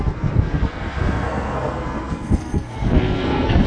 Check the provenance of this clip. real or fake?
fake